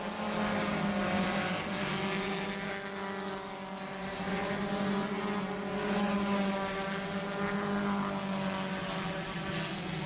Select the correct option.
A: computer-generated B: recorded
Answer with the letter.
B